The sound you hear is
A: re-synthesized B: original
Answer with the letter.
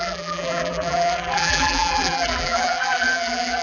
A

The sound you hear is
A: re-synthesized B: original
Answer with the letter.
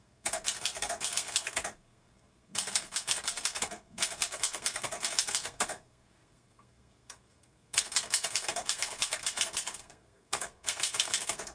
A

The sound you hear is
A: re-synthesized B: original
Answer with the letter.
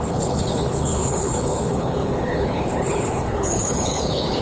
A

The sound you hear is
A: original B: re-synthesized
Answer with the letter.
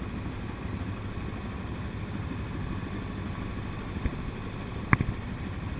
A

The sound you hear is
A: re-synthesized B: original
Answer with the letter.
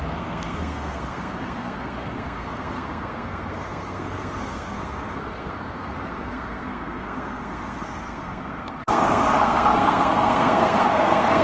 A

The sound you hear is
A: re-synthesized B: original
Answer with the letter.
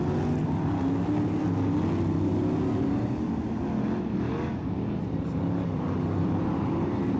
B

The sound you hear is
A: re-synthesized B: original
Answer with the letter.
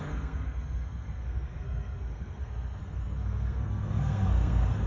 A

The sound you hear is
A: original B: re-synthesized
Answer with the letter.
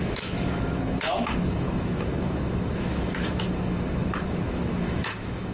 B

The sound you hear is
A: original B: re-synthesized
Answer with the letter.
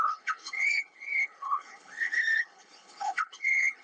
B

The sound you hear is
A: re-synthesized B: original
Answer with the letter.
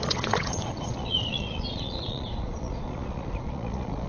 A